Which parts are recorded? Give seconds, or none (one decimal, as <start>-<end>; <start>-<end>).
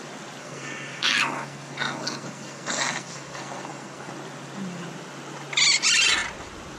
0.0-0.4; 4.1-6.8